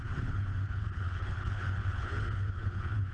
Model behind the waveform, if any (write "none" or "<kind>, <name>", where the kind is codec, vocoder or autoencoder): codec, HILCodec